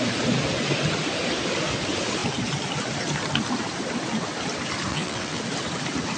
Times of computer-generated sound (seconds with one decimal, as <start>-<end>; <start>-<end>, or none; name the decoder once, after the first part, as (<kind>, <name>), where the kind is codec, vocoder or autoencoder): 4.9-5.4 (vocoder, WaveNeXt)